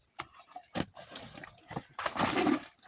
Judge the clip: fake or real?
fake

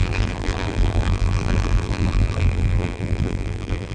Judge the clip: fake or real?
fake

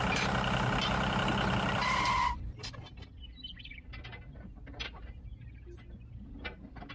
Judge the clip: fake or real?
real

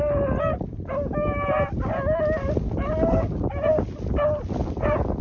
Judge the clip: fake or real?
real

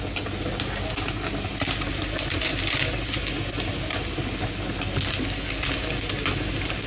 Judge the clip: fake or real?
real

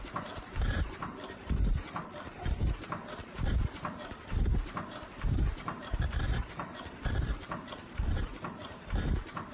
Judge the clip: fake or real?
fake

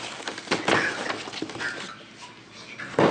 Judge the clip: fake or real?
real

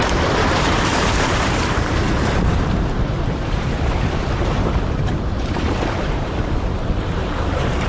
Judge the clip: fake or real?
fake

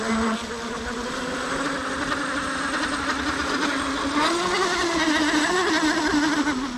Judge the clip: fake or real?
real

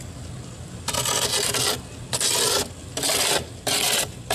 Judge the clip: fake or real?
real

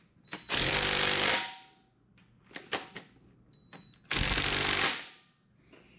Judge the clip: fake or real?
real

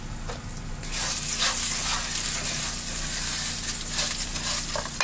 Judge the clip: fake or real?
real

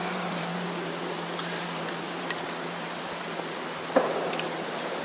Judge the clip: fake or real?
fake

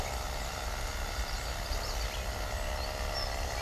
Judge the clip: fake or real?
real